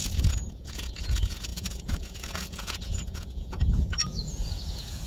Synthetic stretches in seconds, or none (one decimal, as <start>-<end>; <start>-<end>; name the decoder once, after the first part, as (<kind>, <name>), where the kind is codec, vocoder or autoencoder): 0.0-5.1 (vocoder, Vocos)